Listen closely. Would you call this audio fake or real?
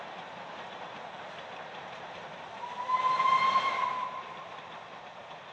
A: fake